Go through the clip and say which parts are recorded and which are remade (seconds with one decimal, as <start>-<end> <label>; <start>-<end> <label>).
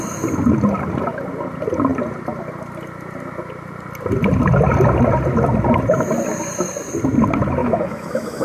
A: 0.0-7.6 recorded; 7.6-8.4 remade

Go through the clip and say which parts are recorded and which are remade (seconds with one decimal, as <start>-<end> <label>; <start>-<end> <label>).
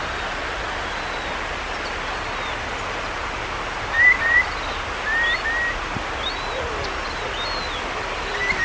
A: 0.0-8.6 recorded